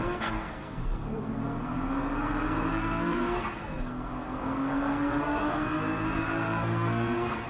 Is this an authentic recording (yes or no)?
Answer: no